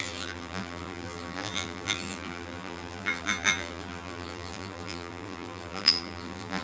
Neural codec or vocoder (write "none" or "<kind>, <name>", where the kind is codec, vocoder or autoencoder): vocoder, BigVGAN v2